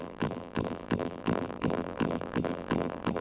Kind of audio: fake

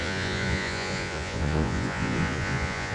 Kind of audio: fake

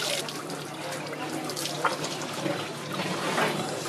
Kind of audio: real